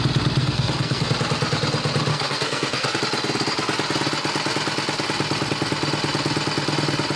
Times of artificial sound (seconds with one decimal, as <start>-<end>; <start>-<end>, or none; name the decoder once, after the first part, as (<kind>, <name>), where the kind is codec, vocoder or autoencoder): 0.4-1.1 (codec, SNAC); 2.1-3.0